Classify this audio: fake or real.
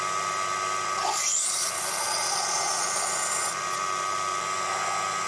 real